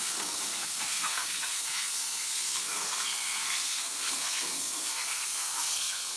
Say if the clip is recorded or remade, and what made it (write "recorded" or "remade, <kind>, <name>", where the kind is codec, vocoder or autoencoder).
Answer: remade, codec, SNAC